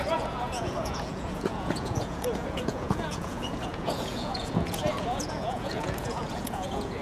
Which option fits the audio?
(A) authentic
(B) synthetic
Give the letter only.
B